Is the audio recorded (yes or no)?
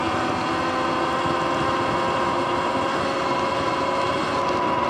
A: yes